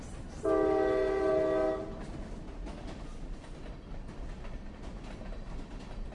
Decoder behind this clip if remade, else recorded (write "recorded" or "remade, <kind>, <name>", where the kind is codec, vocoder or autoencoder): recorded